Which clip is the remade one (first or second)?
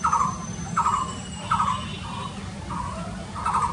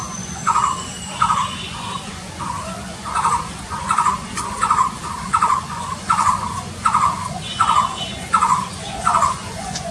second